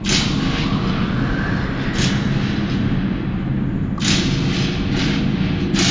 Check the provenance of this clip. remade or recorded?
recorded